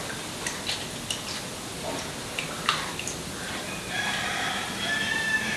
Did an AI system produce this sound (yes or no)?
no